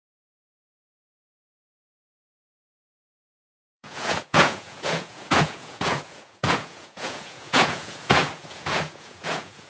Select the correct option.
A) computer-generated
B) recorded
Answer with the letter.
A